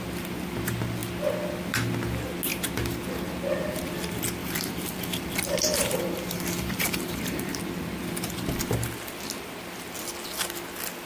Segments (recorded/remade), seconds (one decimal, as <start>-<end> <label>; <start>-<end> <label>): 0.0-4.4 recorded; 4.4-7.6 remade; 7.6-11.1 recorded